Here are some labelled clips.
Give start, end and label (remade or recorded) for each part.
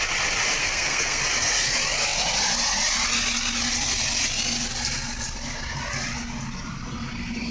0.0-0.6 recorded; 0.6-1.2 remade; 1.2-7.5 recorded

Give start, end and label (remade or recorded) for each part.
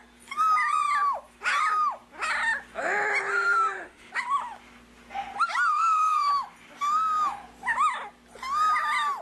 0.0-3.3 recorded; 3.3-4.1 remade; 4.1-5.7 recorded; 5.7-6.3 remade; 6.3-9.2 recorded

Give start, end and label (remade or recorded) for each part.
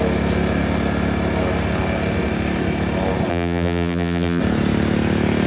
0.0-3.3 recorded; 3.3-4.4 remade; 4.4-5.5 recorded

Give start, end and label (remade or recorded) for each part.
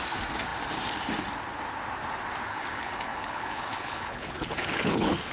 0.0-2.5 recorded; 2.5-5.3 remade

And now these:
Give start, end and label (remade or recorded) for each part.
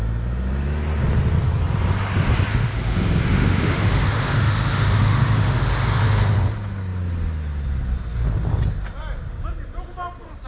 0.0-2.5 recorded; 2.5-5.8 remade; 5.8-10.5 recorded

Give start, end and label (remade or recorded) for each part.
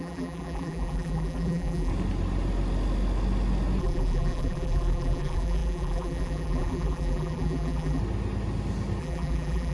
0.0-1.9 remade; 1.9-3.8 recorded; 3.8-8.0 remade; 8.0-9.0 recorded; 9.0-9.7 remade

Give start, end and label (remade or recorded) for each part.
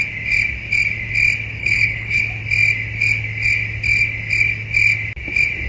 0.0-1.6 recorded; 1.6-2.2 remade; 2.2-5.7 recorded